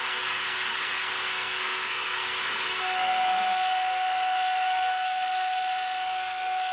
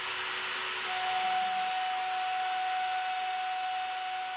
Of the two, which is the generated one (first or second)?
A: first